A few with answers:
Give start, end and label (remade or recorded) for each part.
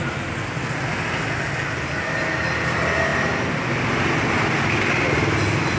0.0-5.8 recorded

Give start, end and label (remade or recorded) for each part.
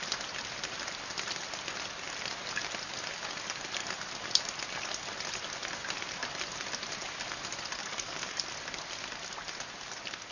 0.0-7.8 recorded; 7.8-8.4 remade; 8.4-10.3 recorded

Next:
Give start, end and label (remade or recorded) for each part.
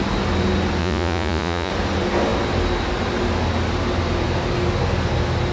0.0-0.8 recorded; 0.8-1.7 remade; 1.7-5.5 recorded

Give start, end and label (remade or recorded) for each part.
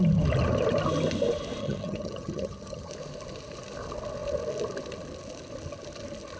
0.0-1.6 recorded; 1.6-2.9 remade; 2.9-6.4 recorded